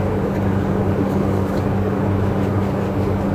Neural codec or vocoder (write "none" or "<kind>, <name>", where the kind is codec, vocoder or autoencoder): codec, DAC